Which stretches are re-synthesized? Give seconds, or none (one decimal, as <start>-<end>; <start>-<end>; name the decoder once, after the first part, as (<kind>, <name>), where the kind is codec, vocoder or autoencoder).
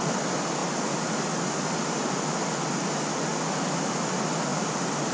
none